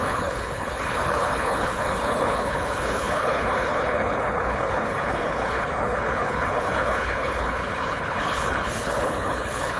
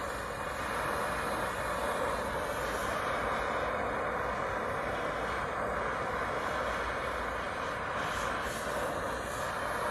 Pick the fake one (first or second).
first